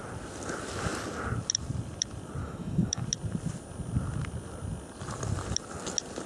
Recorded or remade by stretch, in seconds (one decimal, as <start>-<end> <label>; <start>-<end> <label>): 0.0-2.4 recorded; 2.4-3.0 remade; 3.0-6.3 recorded